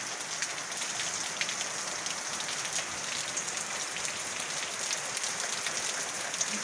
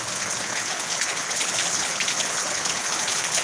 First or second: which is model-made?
second